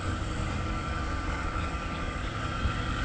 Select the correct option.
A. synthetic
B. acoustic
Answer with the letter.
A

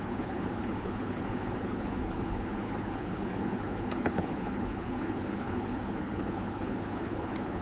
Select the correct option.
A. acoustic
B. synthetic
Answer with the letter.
B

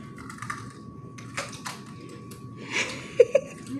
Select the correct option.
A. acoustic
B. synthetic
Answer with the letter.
A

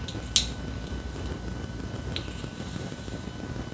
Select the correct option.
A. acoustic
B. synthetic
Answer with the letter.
A